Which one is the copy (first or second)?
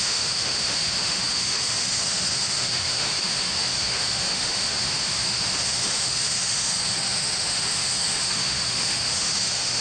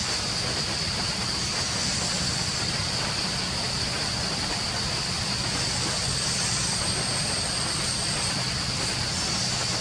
first